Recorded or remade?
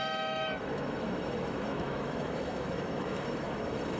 remade